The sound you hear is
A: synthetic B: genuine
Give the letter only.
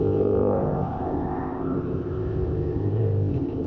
A